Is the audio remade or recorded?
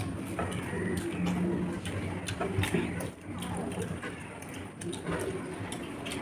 recorded